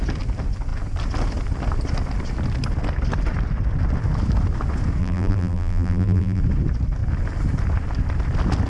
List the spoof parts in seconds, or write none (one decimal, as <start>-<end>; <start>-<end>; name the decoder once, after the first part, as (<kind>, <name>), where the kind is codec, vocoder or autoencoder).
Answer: 5.0-6.4 (vocoder, BigVGAN v2)

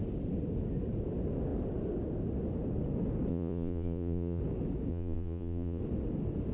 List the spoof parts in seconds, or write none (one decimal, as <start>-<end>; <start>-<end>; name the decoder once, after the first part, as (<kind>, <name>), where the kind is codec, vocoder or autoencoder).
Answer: 3.3-4.4 (vocoder, Vocos); 4.9-5.8

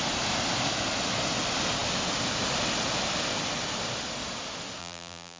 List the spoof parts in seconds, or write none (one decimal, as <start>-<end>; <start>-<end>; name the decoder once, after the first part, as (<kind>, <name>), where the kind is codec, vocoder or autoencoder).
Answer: 4.8-5.4 (vocoder, BigVGAN v2)

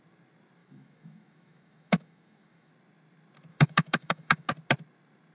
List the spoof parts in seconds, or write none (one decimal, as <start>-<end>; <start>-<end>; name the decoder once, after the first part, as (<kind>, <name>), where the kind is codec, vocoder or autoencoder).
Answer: 0.6-2.7 (autoencoder, DAC-VAE); 3.5-4.5

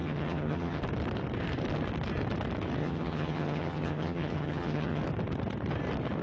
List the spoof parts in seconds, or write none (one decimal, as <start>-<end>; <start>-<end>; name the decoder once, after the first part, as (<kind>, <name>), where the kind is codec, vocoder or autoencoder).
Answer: 0.0-0.8 (vocoder, HiFi-GAN); 2.8-5.0

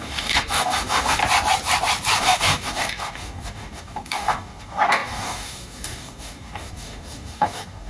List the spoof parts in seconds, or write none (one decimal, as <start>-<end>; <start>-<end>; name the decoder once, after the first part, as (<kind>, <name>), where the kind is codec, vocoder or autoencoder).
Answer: 0.0-1.2 (codec, DAC); 2.2-7.9